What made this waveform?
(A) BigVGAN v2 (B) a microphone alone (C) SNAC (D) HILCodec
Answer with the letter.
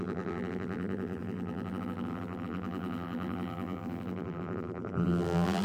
A